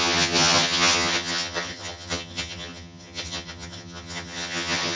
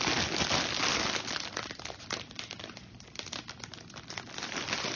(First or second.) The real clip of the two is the second